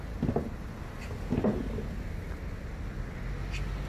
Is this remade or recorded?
recorded